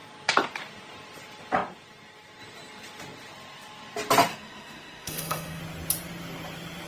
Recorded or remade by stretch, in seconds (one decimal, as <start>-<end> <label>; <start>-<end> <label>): 0.0-4.3 recorded; 4.3-5.6 remade; 5.6-6.9 recorded